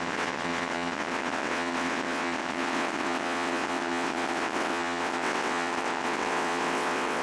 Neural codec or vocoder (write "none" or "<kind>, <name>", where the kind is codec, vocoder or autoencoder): vocoder, WaveNeXt